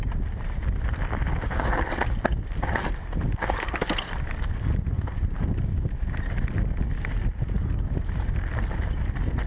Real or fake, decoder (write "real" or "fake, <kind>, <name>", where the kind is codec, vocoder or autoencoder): real